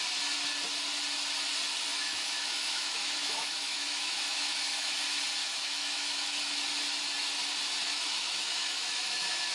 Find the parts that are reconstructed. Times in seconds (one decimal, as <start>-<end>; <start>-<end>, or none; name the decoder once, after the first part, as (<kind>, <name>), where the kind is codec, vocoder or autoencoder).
1.9-5.0 (autoencoder, DAC-VAE); 5.4-6.4; 7.8-9.5